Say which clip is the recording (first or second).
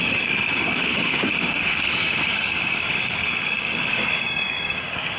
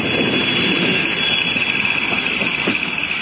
second